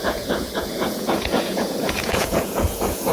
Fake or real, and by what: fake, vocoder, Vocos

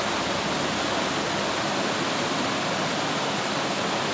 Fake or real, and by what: real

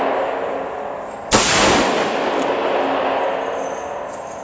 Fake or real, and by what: real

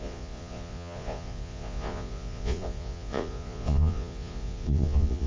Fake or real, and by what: fake, vocoder, Vocos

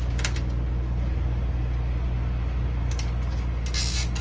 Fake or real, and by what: real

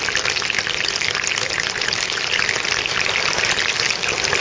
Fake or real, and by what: real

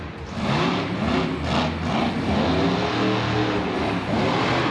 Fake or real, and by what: real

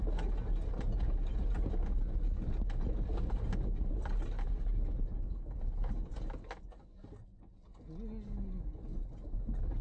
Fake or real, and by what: real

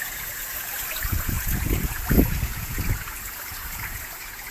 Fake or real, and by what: fake, vocoder, Vocos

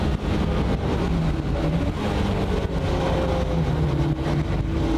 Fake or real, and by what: real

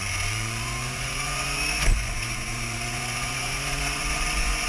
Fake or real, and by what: fake, vocoder, Vocos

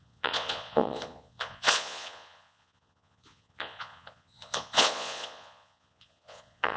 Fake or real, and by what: fake, vocoder, Vocos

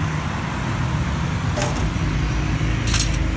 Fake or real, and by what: real